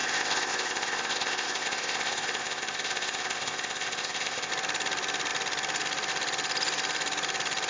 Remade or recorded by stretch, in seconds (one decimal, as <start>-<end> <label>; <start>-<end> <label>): 0.0-4.5 remade; 4.5-7.7 recorded